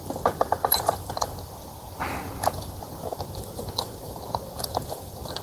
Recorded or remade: remade